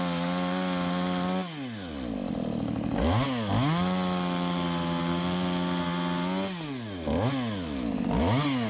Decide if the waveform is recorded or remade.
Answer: recorded